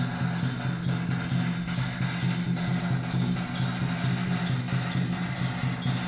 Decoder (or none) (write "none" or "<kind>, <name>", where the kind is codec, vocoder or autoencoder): none